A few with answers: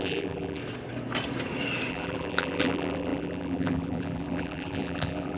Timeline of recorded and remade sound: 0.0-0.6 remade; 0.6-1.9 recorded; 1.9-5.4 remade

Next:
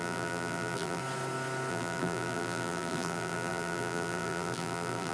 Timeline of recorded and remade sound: 0.0-1.0 remade; 1.0-1.7 recorded; 1.7-5.1 remade

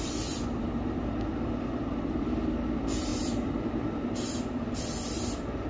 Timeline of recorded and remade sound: 0.0-5.7 remade